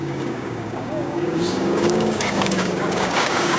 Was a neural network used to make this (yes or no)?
yes